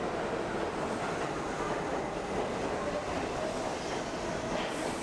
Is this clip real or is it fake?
real